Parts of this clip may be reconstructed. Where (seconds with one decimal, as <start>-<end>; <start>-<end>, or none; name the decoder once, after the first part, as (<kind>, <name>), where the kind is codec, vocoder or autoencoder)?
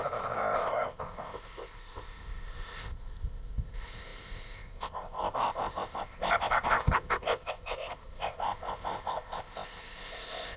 0.0-10.6 (codec, ZipCodec)